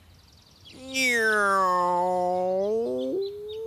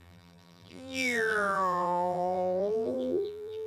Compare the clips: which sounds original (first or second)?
first